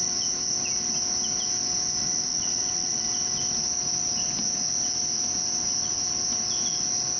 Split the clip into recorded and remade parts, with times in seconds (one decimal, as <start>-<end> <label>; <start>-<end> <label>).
0.0-2.3 recorded; 2.3-3.0 remade; 3.0-7.2 recorded